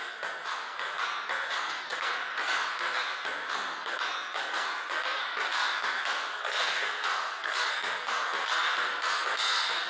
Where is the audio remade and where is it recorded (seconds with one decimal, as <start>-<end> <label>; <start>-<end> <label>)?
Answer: 0.0-9.9 remade